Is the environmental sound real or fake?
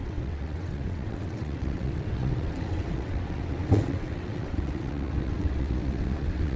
fake